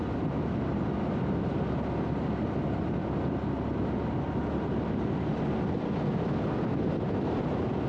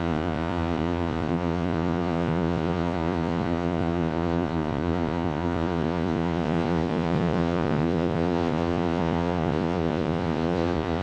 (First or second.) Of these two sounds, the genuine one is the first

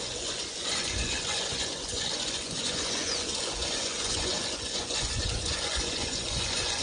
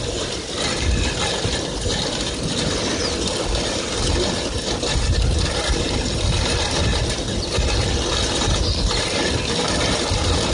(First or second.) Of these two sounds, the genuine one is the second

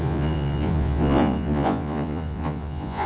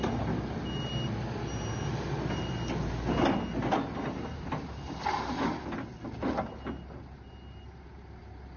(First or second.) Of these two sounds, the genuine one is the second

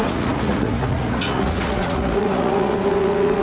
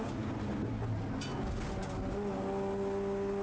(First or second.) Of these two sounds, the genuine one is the second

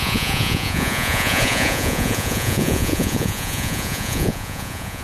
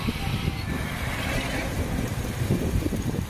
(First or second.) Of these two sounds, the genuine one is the second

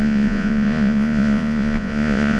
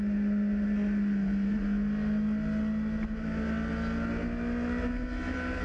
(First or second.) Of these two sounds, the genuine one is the second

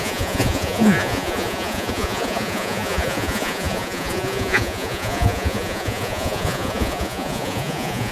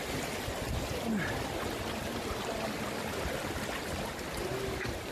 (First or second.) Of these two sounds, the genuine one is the second